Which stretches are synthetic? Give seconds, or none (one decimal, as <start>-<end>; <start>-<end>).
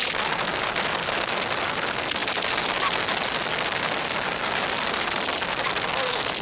none